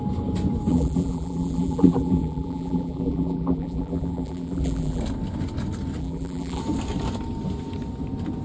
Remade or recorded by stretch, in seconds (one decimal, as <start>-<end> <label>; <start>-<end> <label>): 0.0-0.7 recorded; 0.7-5.0 remade; 5.0-6.0 recorded; 6.0-6.6 remade; 6.6-8.4 recorded